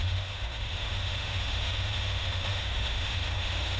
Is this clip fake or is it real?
fake